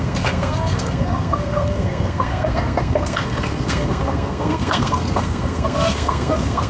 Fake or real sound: fake